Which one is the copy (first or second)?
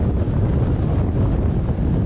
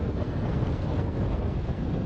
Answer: second